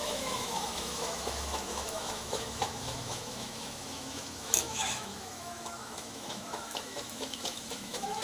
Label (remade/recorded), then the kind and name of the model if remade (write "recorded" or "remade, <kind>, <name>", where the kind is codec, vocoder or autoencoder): remade, autoencoder, DAC-VAE